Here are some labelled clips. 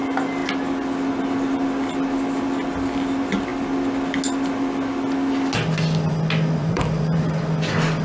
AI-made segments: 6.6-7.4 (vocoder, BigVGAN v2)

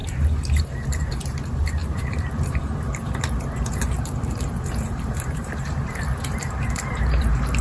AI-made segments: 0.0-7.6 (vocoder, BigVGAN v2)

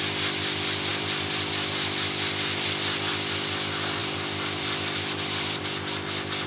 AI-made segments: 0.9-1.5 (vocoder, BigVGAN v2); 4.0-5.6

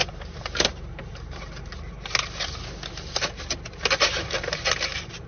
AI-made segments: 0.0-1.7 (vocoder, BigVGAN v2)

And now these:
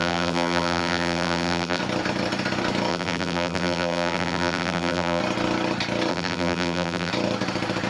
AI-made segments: 0.0-1.8 (vocoder, BigVGAN v2); 2.9-5.2; 6.1-7.1

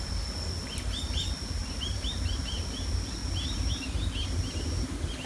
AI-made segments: 1.6-2.4 (vocoder, BigVGAN v2); 3.2-4.4

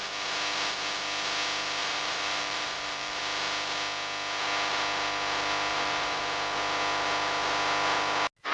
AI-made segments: 1.8-3.2 (vocoder, BigVGAN v2); 5.7-6.2